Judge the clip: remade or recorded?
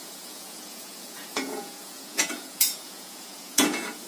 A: remade